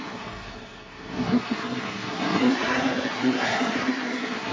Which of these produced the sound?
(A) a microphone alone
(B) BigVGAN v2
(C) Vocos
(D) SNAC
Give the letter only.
D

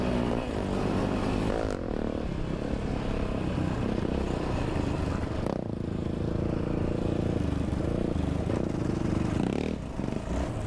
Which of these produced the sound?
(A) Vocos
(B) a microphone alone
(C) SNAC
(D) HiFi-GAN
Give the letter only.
B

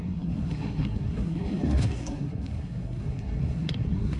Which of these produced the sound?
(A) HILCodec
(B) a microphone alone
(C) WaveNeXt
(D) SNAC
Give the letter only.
D